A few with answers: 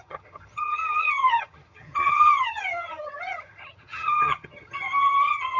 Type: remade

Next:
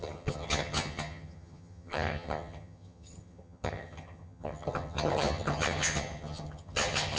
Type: remade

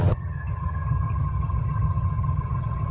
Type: remade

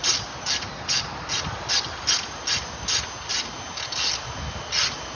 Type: recorded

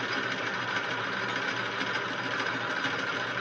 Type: recorded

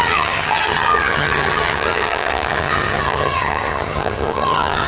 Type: remade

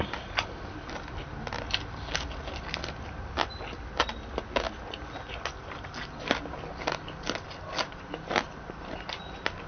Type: recorded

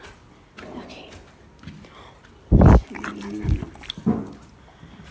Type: recorded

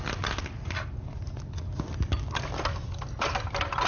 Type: recorded